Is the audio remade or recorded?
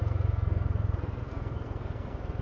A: remade